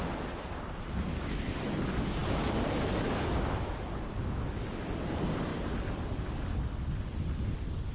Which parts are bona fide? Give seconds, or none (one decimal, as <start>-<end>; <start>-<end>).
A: 0.0-7.9